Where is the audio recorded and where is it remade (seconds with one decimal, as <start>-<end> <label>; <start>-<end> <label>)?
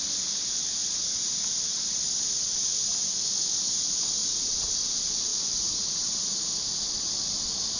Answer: 0.0-4.2 recorded; 4.2-4.7 remade; 4.7-5.3 recorded; 5.3-6.8 remade; 6.8-7.8 recorded